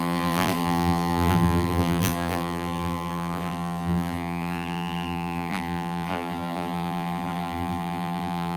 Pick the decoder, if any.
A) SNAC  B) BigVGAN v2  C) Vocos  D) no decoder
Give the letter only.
B